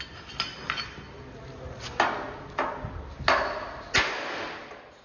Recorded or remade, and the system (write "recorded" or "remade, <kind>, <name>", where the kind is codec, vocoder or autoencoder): recorded